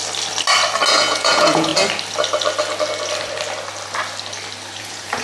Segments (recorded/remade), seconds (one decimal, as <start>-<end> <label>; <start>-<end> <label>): 0.0-0.9 recorded; 0.9-1.7 remade; 1.7-4.8 recorded; 4.8-5.2 remade

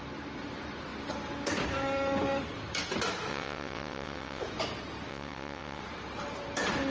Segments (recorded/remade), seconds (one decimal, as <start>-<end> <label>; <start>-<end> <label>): 0.0-3.3 recorded; 3.3-4.4 remade; 4.4-5.1 recorded; 5.1-5.8 remade; 5.8-6.9 recorded

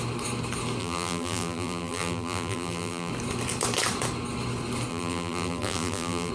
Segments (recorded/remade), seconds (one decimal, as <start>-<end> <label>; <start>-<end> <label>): 0.0-0.8 recorded; 0.8-3.1 remade; 3.1-4.9 recorded; 4.9-6.3 remade

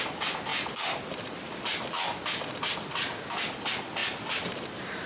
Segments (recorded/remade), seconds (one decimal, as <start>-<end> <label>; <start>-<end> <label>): 0.0-5.1 recorded

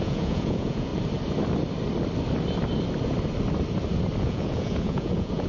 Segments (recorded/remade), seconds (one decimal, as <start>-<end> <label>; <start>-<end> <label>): 0.0-0.9 remade; 0.9-4.2 recorded; 4.2-5.5 remade

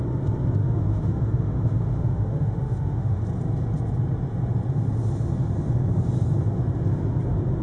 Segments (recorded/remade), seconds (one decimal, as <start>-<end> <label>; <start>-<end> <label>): 0.0-0.6 recorded; 0.6-3.2 remade; 3.2-7.6 recorded

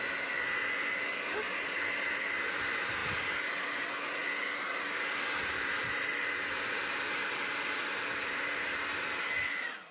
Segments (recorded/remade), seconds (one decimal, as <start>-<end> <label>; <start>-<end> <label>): 0.0-9.9 recorded

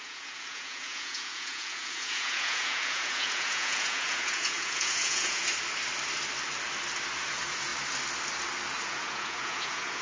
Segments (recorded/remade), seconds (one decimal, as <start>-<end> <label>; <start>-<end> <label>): 0.0-5.5 remade; 5.5-7.3 recorded; 7.3-7.7 remade; 7.7-8.8 recorded; 8.8-10.0 remade